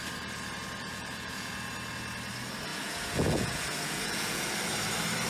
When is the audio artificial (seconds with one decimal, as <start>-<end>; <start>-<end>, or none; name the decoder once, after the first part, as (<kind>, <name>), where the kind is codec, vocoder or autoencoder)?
0.9-1.5 (vocoder, Vocos); 2.7-4.5